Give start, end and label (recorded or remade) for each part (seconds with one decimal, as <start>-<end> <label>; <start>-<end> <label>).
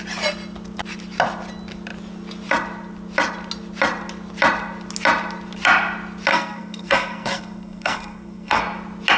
0.0-6.3 recorded; 6.3-8.6 remade; 8.6-9.2 recorded